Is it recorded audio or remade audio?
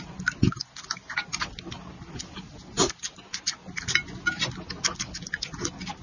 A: recorded